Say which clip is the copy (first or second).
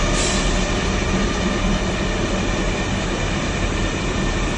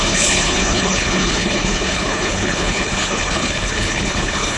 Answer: second